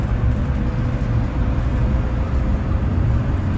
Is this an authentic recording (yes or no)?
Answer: yes